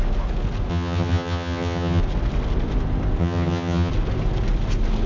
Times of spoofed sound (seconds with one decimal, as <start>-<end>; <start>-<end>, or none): 0.7-2.0; 3.2-3.9